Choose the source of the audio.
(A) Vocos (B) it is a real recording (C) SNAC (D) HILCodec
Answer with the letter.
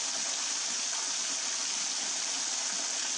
B